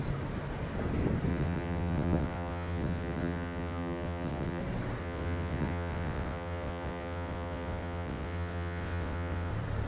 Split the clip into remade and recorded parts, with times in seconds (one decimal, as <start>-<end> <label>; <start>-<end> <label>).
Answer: 0.0-1.3 recorded; 1.3-4.6 remade; 4.6-5.0 recorded; 5.0-9.5 remade; 9.5-9.9 recorded